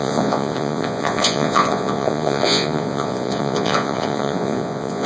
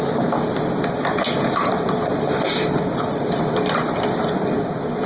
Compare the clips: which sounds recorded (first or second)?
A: second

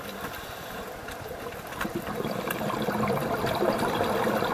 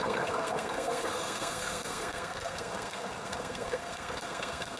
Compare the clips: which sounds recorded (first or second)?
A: first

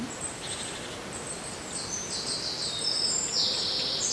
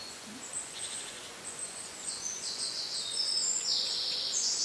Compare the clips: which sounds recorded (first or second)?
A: first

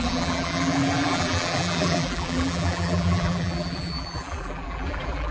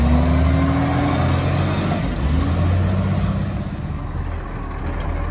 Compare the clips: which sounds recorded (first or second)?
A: second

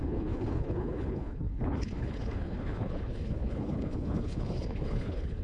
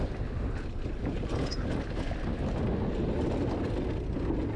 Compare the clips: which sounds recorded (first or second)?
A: second